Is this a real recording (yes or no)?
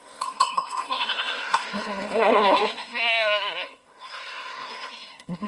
no